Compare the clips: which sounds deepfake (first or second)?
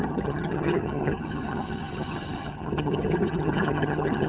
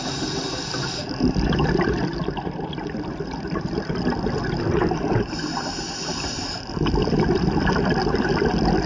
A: first